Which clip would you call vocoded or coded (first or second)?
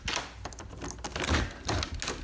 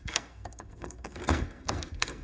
second